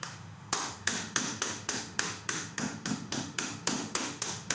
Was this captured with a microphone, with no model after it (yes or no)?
no